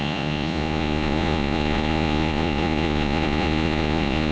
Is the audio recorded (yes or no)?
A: no